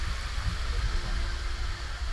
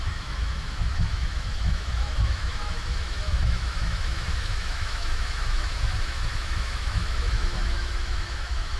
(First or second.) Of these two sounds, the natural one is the first